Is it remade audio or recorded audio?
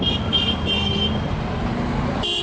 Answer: recorded